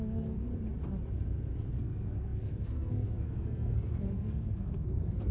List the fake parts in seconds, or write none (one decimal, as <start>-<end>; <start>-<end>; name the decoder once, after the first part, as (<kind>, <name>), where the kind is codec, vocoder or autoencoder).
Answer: 0.0-0.5 (codec, SNAC); 1.7-5.3